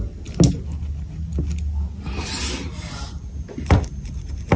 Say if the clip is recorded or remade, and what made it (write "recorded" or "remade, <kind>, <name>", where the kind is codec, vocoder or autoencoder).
recorded